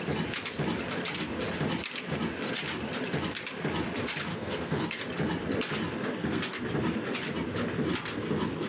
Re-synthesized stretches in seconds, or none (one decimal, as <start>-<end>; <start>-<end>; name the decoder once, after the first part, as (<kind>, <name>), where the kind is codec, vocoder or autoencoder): 4.3-5.0 (codec, SNAC); 6.1-6.6